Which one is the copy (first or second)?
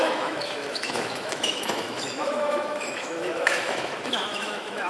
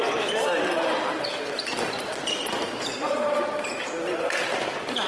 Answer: first